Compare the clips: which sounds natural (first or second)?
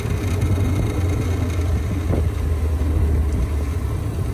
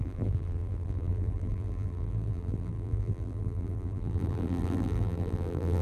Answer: first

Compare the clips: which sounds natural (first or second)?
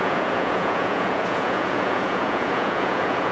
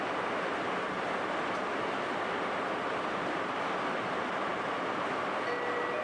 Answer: second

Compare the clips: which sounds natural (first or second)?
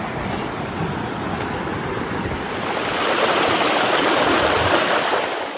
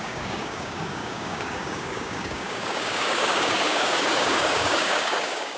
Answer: first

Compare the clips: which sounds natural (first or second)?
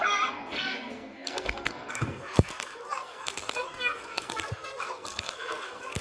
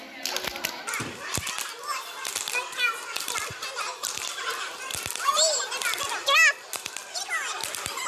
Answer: second